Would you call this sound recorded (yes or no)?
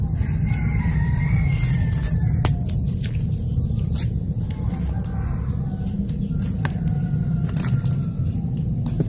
yes